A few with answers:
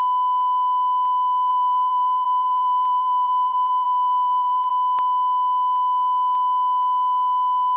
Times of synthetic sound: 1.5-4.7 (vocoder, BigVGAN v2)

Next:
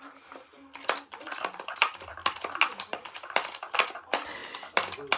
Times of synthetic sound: 0.0-2.2 (vocoder, BigVGAN v2); 2.8-4.4

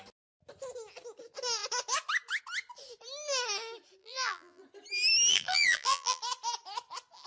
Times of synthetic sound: 4.0-4.6 (vocoder, BigVGAN v2); 5.3-6.2

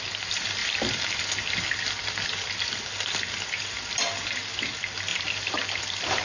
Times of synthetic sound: 5.1-6.2 (vocoder, BigVGAN v2)